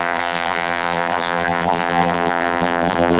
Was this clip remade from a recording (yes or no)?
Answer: yes